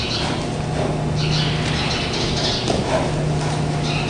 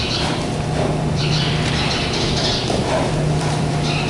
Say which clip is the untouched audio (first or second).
first